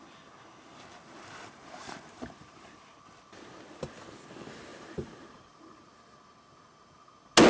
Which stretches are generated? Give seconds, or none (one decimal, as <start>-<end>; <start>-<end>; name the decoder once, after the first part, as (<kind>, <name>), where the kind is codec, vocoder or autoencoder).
0.9-3.0 (vocoder, BigVGAN v2); 4.7-5.8